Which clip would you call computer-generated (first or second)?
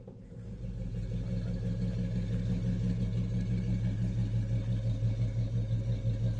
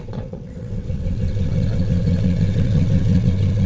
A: second